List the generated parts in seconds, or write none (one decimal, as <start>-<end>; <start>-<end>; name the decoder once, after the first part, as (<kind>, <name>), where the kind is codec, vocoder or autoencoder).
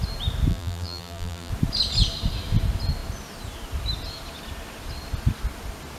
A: 0.5-1.5 (vocoder, BigVGAN v2)